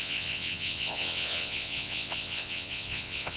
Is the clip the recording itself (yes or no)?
no